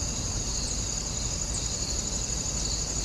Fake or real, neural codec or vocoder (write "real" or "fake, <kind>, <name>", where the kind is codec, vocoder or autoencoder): real